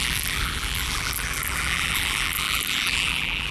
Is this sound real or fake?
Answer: fake